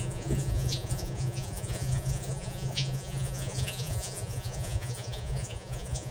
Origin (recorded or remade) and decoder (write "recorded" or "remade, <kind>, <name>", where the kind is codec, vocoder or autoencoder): remade, vocoder, Vocos